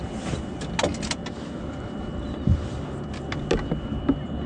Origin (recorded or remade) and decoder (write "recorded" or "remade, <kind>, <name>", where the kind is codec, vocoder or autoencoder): recorded